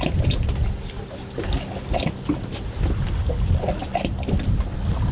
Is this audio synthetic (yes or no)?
no